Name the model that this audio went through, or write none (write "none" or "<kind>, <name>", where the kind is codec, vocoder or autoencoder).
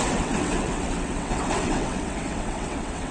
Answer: vocoder, WaveNeXt